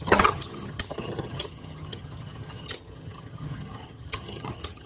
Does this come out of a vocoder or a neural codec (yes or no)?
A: yes